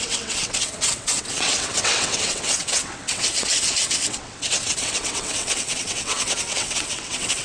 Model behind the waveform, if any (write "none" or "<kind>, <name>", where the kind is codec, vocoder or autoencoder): vocoder, WaveNeXt